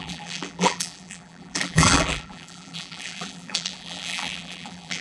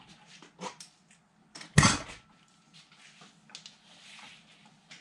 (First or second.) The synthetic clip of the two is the first